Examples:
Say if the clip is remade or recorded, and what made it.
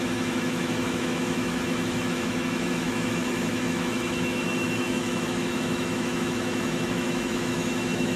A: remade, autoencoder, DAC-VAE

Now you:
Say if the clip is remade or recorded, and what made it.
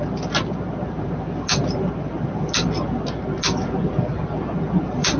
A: recorded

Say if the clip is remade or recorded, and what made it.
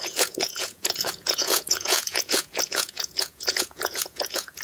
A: remade, vocoder, Vocos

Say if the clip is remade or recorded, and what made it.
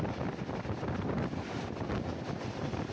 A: recorded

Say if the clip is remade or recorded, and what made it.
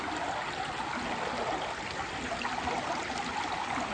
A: recorded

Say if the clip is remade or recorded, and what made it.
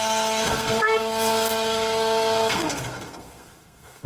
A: remade, codec, SNAC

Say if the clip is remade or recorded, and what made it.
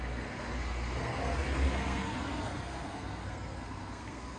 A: remade, codec, SNAC